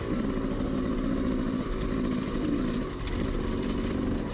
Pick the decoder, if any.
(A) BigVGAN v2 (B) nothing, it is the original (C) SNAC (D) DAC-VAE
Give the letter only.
B